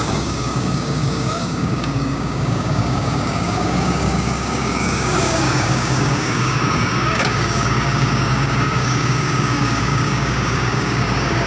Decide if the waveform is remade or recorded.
remade